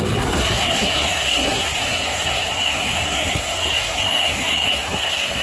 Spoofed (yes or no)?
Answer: yes